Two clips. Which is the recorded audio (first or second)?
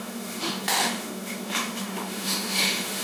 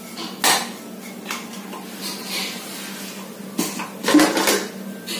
second